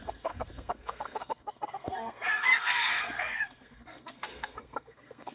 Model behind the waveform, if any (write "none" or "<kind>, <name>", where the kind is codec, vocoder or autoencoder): codec, SNAC